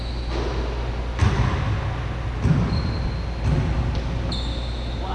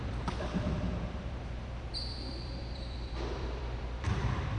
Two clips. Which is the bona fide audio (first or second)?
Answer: first